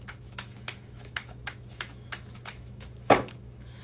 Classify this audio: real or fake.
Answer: fake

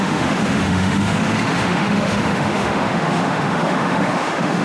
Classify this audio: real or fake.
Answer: fake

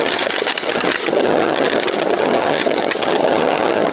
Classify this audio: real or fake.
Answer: fake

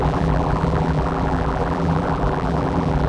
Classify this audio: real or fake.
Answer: fake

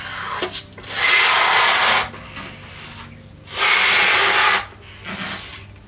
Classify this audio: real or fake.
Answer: real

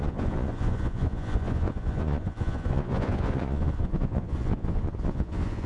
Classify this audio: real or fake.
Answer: fake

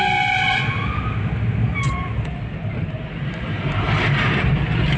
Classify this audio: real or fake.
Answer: real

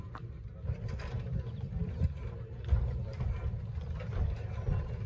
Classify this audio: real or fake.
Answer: real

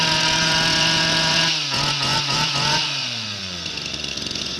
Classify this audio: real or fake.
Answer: fake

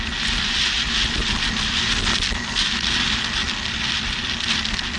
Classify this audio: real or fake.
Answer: real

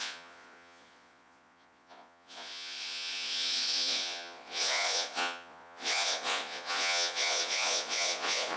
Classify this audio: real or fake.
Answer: fake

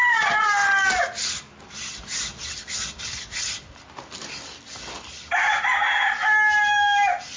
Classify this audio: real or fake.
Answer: real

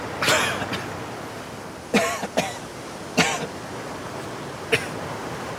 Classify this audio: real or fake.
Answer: real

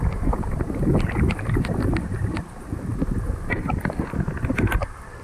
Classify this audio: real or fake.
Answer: real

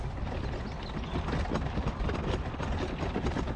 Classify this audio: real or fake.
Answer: real